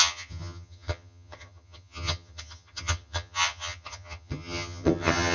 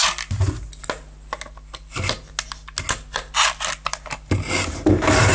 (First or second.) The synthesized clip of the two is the first